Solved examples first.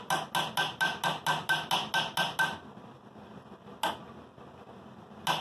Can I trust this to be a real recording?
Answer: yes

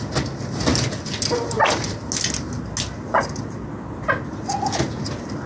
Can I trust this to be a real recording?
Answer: yes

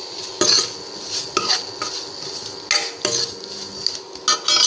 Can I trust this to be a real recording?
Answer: yes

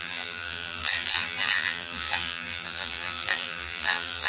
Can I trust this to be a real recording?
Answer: no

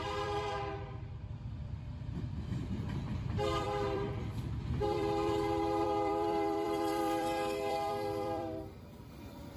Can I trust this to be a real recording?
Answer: no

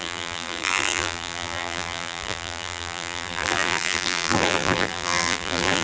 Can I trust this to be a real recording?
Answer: no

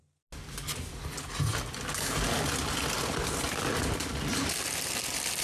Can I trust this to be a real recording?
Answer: yes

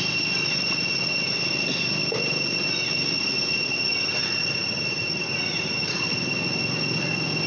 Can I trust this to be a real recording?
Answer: yes